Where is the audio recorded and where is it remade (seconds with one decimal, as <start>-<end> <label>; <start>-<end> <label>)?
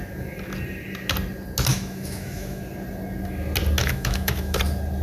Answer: 0.0-1.7 recorded; 1.7-2.6 remade; 2.6-3.8 recorded; 3.8-4.6 remade; 4.6-5.0 recorded